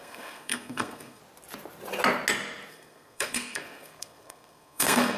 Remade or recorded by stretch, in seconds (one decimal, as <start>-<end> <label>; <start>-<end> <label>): 0.0-1.2 remade; 1.2-2.7 recorded; 2.7-5.2 remade